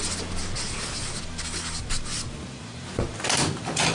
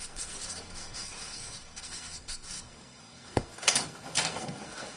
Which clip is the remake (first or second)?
second